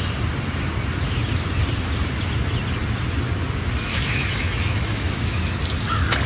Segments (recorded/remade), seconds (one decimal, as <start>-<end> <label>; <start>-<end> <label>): 0.0-3.9 recorded; 3.9-5.4 remade; 5.4-6.3 recorded